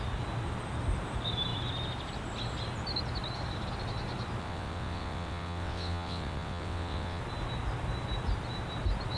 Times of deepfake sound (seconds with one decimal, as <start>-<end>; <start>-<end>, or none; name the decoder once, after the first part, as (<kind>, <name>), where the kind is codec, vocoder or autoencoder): 4.4-7.2 (vocoder, WaveNeXt)